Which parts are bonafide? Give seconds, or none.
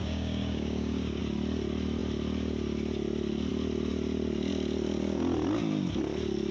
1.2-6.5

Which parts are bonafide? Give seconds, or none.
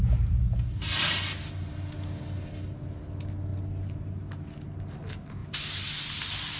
0.0-6.6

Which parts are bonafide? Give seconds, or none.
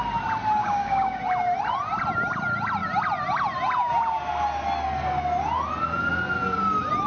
0.0-0.6; 1.2-7.1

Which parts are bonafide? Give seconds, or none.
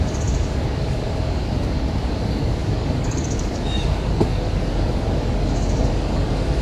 none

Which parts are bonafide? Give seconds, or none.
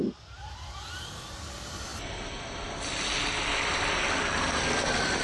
0.0-5.2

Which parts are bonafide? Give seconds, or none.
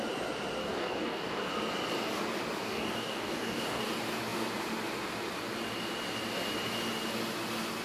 0.0-0.6; 1.5-2.6; 3.8-7.8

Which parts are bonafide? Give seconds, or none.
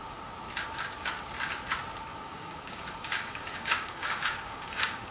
0.0-2.1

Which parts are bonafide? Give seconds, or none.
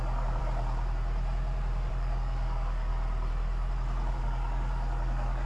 0.4-1.9; 2.9-4.1